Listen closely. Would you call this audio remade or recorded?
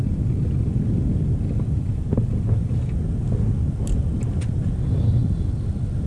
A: recorded